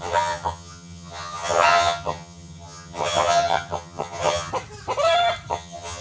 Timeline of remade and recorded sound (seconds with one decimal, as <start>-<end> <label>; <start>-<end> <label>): 0.0-4.5 remade; 4.5-5.5 recorded; 5.5-6.0 remade